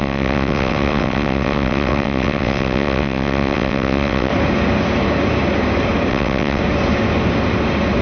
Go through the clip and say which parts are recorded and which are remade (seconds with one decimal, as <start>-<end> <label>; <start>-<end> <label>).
0.0-4.3 remade; 4.3-6.1 recorded; 6.1-6.6 remade; 6.6-8.0 recorded